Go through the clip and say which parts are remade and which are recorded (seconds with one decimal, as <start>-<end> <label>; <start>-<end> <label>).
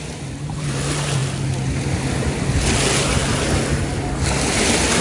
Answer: 0.0-5.0 recorded